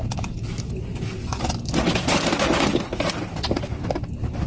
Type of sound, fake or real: real